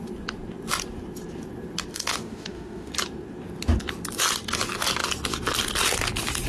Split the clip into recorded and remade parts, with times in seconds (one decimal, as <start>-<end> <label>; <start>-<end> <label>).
0.0-1.9 recorded; 1.9-2.9 remade; 2.9-6.5 recorded